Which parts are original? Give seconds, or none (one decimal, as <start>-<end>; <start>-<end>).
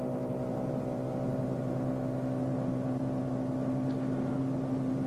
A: 0.0-5.1